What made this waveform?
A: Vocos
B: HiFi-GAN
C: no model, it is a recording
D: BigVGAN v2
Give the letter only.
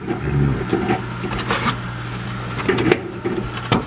C